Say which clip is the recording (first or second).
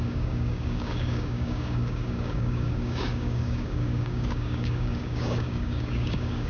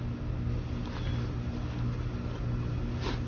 second